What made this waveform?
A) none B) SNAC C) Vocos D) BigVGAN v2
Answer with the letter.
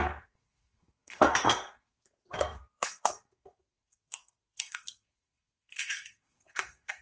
B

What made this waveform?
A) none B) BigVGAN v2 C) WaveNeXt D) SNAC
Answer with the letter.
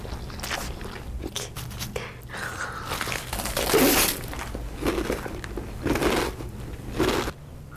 A